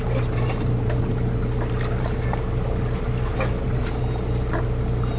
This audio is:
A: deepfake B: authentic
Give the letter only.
B